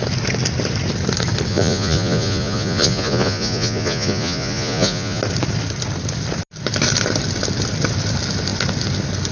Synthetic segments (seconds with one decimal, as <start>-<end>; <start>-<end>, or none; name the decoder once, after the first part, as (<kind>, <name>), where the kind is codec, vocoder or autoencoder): 1.5-5.2 (vocoder, Vocos)